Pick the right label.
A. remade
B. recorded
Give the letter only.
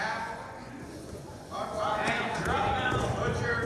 A